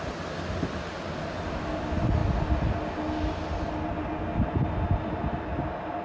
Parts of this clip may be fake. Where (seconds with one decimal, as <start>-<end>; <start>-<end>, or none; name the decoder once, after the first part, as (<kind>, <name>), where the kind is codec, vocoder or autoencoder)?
none